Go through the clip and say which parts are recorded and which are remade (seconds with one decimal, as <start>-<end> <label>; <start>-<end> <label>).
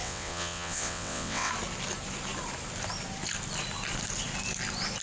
0.0-1.5 remade; 1.5-5.0 recorded